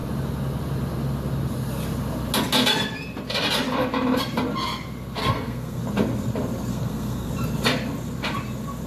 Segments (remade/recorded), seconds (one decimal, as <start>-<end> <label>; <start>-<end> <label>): 0.0-5.2 recorded; 5.2-5.8 remade; 5.8-6.7 recorded; 6.7-7.3 remade; 7.3-8.9 recorded